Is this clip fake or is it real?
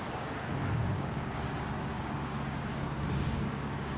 fake